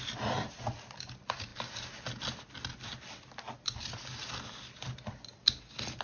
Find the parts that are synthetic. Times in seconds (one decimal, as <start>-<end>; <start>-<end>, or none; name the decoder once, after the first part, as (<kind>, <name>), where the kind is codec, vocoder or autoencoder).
none